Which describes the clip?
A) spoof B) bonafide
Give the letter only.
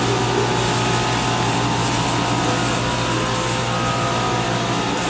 B